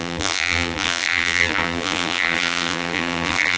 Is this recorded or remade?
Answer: remade